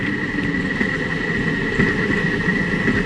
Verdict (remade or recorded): recorded